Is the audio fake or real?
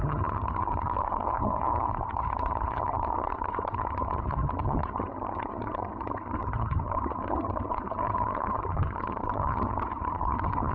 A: fake